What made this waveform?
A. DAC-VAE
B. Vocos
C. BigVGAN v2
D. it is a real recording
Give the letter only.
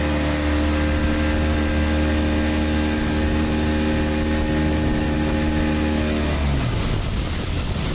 D